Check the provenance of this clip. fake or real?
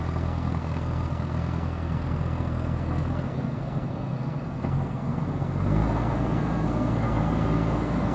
fake